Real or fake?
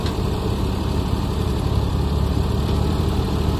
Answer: fake